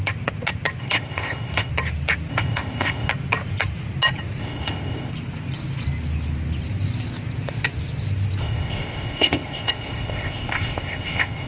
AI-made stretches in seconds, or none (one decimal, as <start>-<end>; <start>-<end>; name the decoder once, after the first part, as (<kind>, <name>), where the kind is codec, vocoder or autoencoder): 0.8-1.7 (codec, ZipCodec); 2.3-3.1; 4.4-5.1; 8.4-11.5